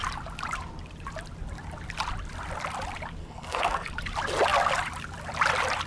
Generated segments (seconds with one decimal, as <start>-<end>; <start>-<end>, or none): 3.2-3.9

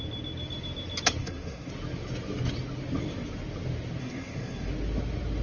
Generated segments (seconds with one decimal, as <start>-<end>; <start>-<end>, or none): 1.2-1.7; 4.0-4.7

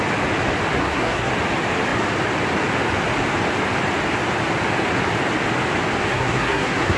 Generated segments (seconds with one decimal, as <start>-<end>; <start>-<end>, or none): 0.7-1.3; 6.1-7.0